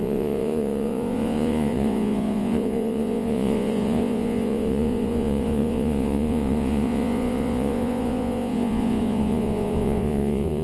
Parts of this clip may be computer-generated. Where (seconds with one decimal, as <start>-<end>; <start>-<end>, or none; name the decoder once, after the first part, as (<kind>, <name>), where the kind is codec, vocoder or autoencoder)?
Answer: 0.0-10.6 (vocoder, Vocos)